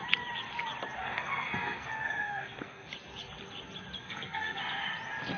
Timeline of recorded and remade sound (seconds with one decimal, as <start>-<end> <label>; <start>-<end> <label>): 0.0-1.0 recorded; 1.0-2.9 remade; 2.9-4.0 recorded; 4.0-4.6 remade; 4.6-5.4 recorded